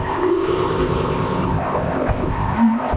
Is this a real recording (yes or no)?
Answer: no